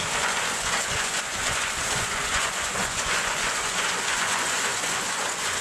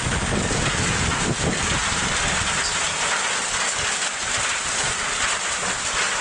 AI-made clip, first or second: first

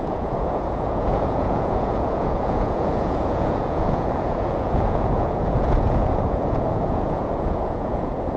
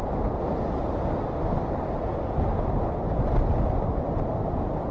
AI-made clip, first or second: first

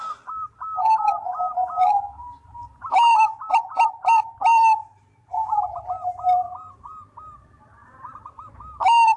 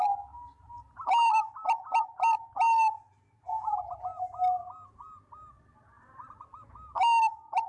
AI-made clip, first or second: first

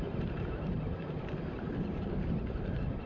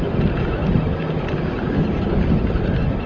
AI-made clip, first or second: first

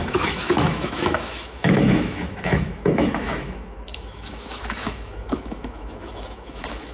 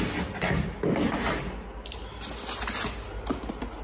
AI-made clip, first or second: first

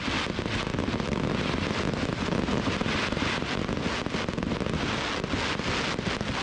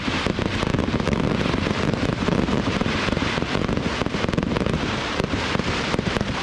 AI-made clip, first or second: second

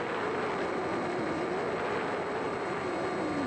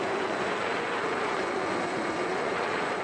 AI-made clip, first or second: second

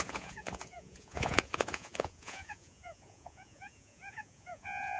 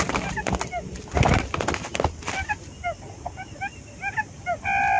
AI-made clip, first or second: first